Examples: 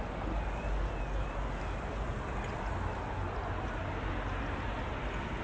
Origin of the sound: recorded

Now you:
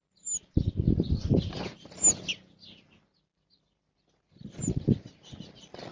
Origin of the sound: recorded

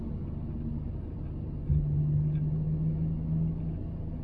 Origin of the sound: recorded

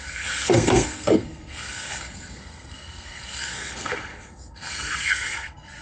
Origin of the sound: remade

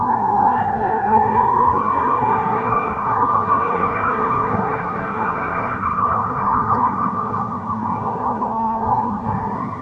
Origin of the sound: remade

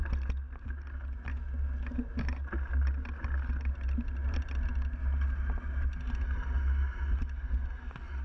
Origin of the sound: recorded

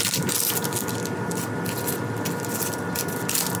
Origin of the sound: recorded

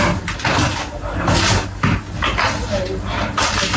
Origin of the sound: recorded